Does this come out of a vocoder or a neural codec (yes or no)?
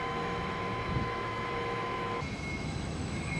yes